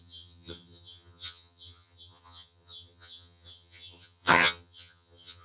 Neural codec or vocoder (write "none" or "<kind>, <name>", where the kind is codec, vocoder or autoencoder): vocoder, HiFi-GAN